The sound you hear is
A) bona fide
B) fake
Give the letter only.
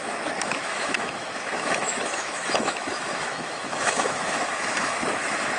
B